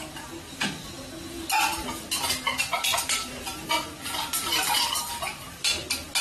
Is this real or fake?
real